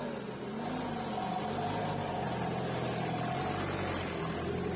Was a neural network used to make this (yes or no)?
no